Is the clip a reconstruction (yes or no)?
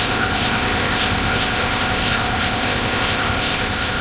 yes